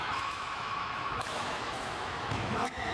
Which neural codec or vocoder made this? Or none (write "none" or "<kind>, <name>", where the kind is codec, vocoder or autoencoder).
autoencoder, DAC-VAE